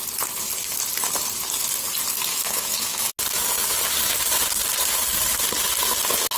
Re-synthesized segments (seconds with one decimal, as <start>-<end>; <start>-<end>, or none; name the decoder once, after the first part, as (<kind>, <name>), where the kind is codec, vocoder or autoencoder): 2.3-3.1 (autoencoder, DAC-VAE)